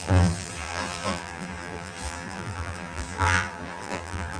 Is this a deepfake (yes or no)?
yes